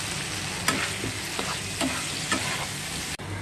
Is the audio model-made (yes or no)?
no